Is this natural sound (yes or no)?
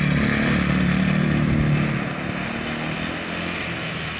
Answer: yes